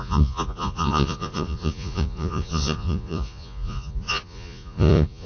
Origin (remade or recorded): remade